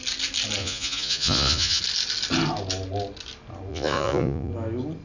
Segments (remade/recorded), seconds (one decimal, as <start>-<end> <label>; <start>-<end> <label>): 0.0-0.6 recorded; 0.6-1.8 remade; 1.8-3.7 recorded; 3.7-4.5 remade; 4.5-5.0 recorded